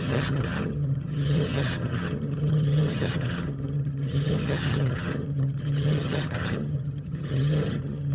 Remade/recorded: remade